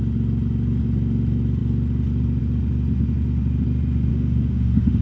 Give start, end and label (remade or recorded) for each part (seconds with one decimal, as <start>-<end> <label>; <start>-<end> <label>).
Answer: 0.0-4.1 recorded; 4.1-5.0 remade